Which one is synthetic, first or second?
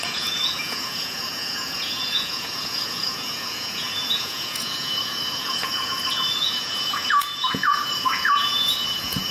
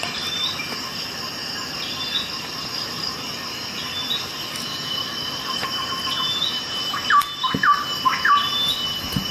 first